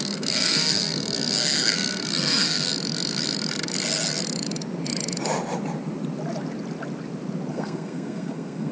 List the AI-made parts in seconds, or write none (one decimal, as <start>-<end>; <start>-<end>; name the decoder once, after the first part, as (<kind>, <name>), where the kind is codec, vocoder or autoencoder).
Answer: 0.0-2.7 (codec, SNAC); 7.5-8.7